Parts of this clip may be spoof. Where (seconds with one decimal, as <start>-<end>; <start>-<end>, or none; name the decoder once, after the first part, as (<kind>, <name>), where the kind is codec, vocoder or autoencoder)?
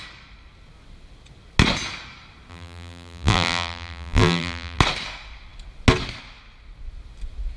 2.5-4.8 (vocoder, BigVGAN v2)